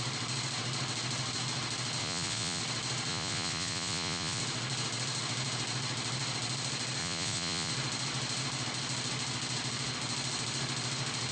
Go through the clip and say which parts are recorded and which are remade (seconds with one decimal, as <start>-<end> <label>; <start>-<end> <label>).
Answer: 0.0-2.0 recorded; 2.0-2.6 remade; 2.6-3.1 recorded; 3.1-4.4 remade; 4.4-7.0 recorded; 7.0-7.7 remade; 7.7-11.3 recorded